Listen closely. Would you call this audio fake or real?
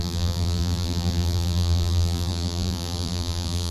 fake